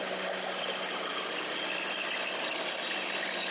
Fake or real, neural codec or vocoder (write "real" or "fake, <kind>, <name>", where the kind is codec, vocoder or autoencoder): real